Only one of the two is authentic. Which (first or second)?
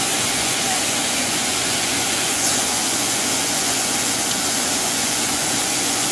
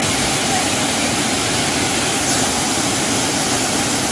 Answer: second